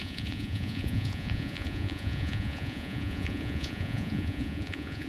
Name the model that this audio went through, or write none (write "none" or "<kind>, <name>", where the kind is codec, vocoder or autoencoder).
vocoder, Vocos